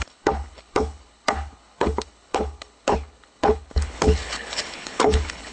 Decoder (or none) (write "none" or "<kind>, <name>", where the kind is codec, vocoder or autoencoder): codec, HILCodec